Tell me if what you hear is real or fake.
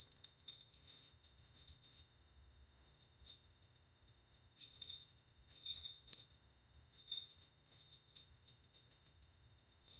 fake